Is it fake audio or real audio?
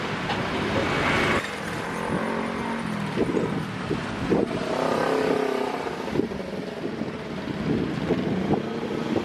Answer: real